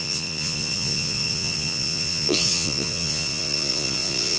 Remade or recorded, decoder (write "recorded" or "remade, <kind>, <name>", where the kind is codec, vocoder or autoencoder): remade, vocoder, Vocos